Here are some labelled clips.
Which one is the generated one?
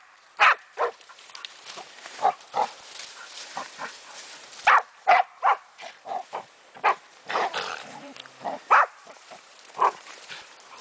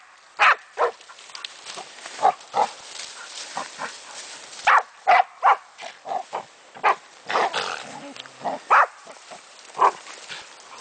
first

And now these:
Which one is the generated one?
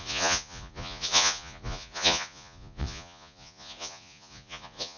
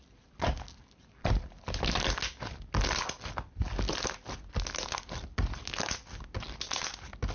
first